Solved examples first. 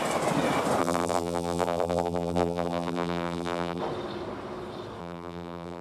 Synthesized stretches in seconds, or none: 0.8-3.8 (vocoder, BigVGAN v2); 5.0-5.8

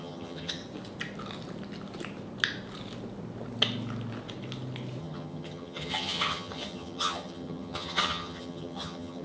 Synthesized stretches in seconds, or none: 0.0-0.6 (vocoder, HiFi-GAN); 5.0-9.2

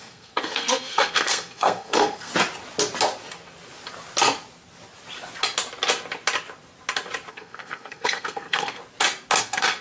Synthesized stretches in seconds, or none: 0.0-2.3 (codec, SNAC); 7.3-8.8; 9.4-9.8

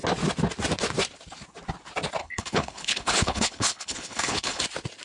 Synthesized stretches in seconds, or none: 2.2-4.6 (codec, HILCodec)

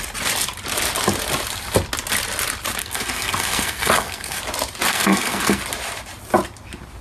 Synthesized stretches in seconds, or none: 2.8-4.4 (codec, SNAC); 4.9-5.6

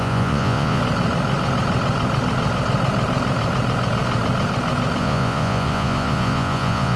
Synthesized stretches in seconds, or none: 0.0-0.8 (vocoder, Vocos); 5.0-7.0

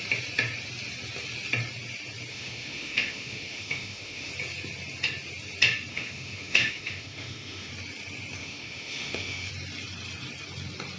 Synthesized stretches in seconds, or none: 2.3-4.3 (autoencoder, DAC-VAE); 5.9-7.7; 8.4-9.5

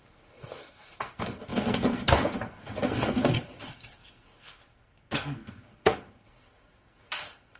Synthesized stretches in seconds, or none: 0.0-7.6 (codec, SNAC)